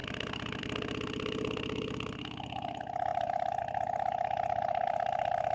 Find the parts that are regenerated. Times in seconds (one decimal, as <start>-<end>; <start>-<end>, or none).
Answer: none